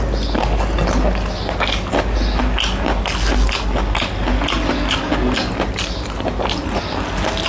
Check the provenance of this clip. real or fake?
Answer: real